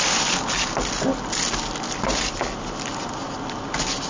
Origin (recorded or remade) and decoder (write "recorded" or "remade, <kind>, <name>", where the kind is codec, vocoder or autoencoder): recorded